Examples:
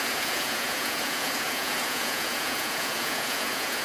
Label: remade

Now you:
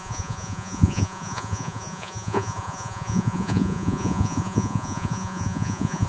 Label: remade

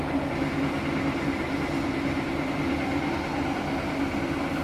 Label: recorded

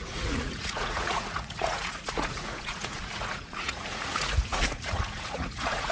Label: remade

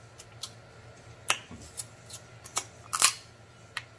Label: recorded